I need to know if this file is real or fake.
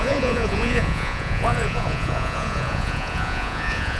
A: fake